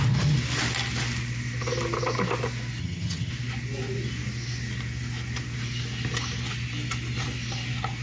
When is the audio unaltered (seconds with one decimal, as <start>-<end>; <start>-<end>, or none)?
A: 0.0-2.8; 3.3-8.0